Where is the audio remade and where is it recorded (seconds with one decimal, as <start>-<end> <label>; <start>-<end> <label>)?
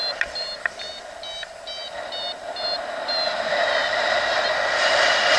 0.0-5.4 recorded